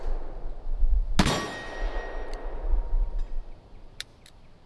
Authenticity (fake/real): real